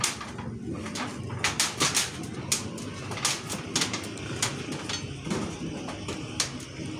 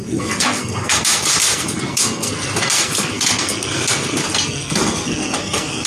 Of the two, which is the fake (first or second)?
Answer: second